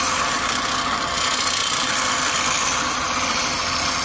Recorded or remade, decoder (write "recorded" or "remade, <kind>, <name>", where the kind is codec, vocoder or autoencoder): recorded